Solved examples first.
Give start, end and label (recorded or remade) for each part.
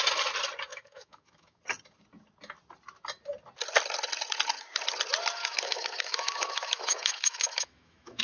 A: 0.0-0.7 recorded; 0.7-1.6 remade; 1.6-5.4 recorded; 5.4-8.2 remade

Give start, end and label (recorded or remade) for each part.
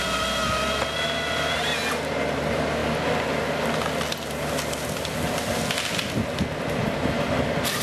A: 0.0-7.8 recorded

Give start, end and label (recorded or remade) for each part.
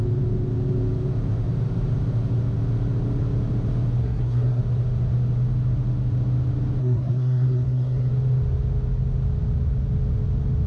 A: 0.0-4.0 recorded; 4.0-4.6 remade; 4.6-6.8 recorded; 6.8-8.1 remade; 8.1-10.7 recorded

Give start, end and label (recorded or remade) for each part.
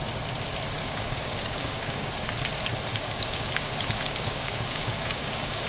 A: 0.0-0.8 recorded; 0.8-2.1 remade; 2.1-2.9 recorded; 2.9-5.7 remade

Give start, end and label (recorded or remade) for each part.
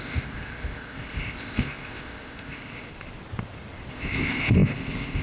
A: 0.0-2.9 remade; 2.9-3.9 recorded; 3.9-5.2 remade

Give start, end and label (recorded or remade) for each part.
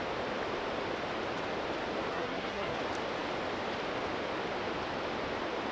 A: 0.0-2.1 recorded; 2.1-2.8 remade; 2.8-5.7 recorded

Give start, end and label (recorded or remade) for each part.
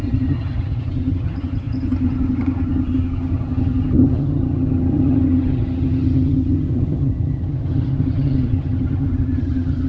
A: 0.0-9.9 remade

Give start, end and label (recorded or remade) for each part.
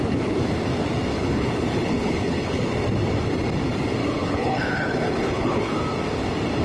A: 0.0-1.1 recorded; 1.1-2.7 remade; 2.7-4.0 recorded; 4.0-5.8 remade; 5.8-6.6 recorded